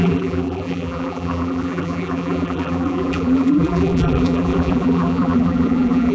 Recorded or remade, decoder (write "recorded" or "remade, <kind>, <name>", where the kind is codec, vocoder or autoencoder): remade, vocoder, BigVGAN v2